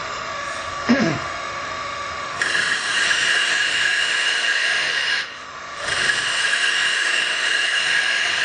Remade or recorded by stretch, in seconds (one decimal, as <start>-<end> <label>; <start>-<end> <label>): 0.0-8.4 remade

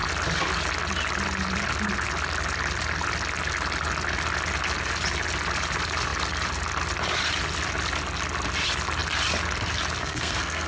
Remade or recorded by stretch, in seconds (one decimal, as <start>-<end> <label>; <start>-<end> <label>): 0.0-10.0 recorded; 10.0-10.7 remade

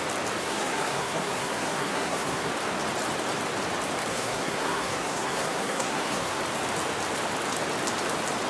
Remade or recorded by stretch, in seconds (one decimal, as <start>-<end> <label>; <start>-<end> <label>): 0.0-0.4 recorded; 0.4-2.5 remade; 2.5-4.1 recorded; 4.1-6.4 remade; 6.4-8.5 recorded

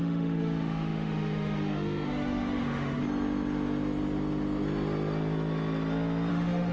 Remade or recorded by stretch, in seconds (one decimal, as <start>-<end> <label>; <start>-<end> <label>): 0.0-3.0 remade; 3.0-6.3 recorded; 6.3-6.7 remade

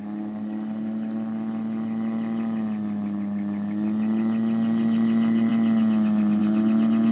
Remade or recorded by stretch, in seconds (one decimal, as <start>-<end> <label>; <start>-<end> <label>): 0.0-7.1 recorded

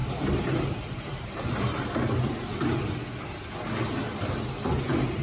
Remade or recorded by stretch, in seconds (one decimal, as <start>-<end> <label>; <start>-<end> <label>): 0.0-2.3 remade; 2.3-5.2 recorded

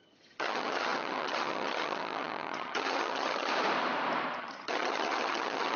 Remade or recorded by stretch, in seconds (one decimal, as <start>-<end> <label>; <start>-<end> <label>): 0.0-3.5 remade; 3.5-4.4 recorded; 4.4-5.8 remade